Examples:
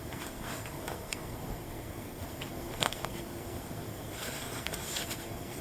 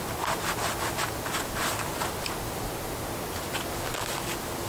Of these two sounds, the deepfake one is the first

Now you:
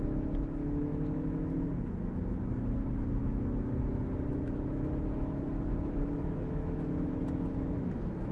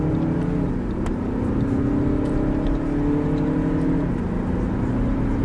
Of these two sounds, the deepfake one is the first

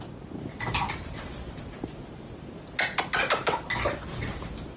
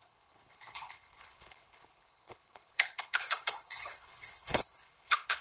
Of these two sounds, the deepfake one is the second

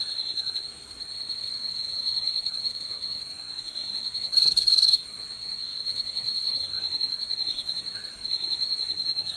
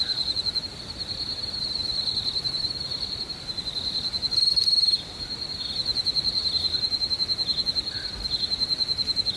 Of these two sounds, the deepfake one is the first